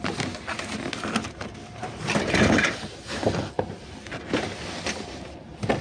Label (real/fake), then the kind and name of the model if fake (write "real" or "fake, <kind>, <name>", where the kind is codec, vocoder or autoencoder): real